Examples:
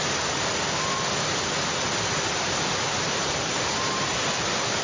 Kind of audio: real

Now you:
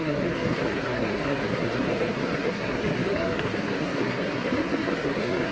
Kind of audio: fake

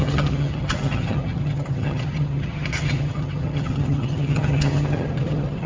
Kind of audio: fake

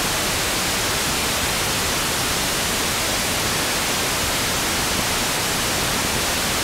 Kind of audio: real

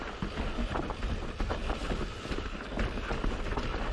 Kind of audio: real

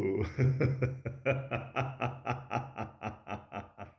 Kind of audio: real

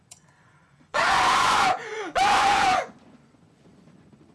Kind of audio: fake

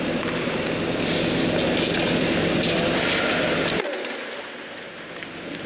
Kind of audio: real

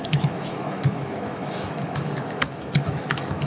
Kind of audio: fake